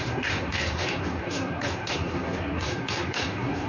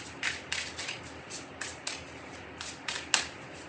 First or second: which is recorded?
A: second